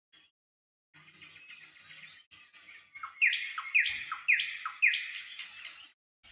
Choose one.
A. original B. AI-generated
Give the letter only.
A